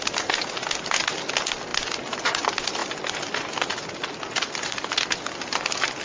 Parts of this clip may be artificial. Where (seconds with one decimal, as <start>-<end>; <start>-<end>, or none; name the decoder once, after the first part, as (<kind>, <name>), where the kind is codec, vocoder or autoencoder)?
none